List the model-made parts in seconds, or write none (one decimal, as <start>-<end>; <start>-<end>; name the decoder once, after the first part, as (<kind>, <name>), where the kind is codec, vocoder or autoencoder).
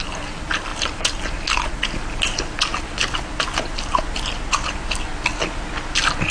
none